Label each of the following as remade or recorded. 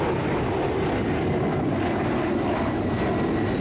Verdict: recorded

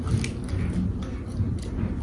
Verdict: recorded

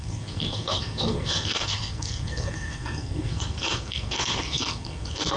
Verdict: remade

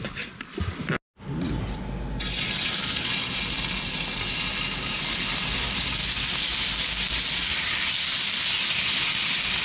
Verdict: recorded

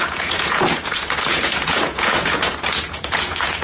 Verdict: remade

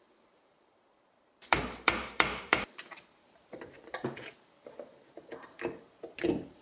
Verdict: remade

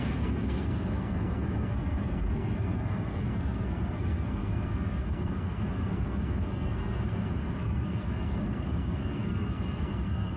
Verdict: remade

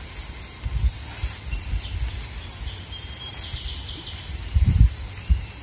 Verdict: recorded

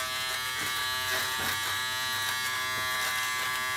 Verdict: recorded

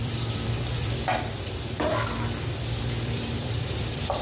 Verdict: remade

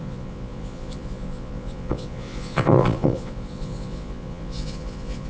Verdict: remade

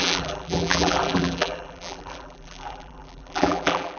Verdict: remade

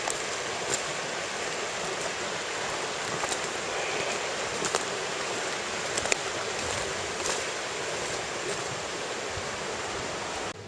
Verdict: recorded